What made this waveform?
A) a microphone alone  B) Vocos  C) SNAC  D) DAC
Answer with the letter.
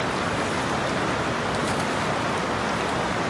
A